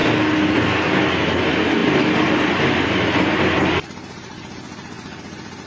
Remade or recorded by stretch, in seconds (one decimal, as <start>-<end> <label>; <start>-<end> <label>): 0.0-1.4 recorded; 1.4-5.7 remade